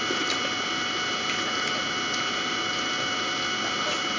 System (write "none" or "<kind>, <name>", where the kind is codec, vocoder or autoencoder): none